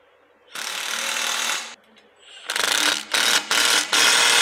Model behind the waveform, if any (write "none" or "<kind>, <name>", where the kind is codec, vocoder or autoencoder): none